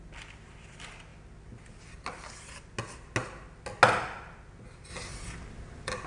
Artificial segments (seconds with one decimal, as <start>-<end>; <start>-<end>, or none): 4.9-6.1